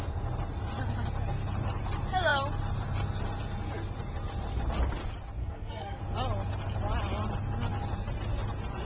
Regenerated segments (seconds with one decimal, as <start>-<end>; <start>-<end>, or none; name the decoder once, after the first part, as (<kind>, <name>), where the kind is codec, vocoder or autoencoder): 5.4-6.0 (codec, SNAC)